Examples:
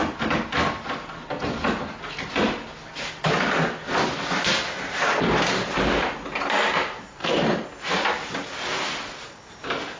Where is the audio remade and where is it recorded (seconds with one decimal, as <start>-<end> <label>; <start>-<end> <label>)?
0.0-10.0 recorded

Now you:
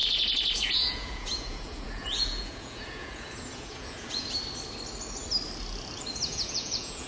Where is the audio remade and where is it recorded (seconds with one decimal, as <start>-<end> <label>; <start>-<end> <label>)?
0.0-4.3 remade; 4.3-6.3 recorded; 6.3-7.1 remade

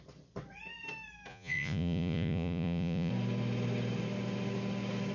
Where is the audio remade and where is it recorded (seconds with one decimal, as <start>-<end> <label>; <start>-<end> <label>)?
0.0-1.3 recorded; 1.3-3.1 remade; 3.1-5.1 recorded

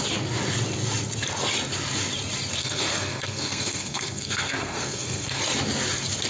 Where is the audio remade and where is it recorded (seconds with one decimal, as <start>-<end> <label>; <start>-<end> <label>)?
0.0-2.6 recorded; 2.6-5.4 remade; 5.4-6.3 recorded

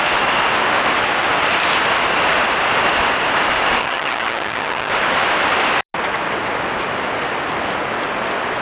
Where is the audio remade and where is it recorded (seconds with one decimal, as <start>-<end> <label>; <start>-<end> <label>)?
0.0-3.8 recorded; 3.8-4.9 remade; 4.9-8.6 recorded